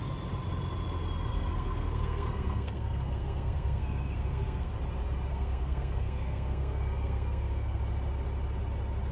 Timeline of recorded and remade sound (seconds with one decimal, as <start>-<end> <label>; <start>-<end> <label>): 0.0-1.3 recorded; 1.3-4.7 remade; 4.7-5.3 recorded; 5.3-7.8 remade; 7.8-9.1 recorded